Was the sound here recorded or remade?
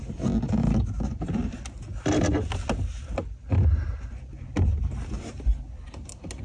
recorded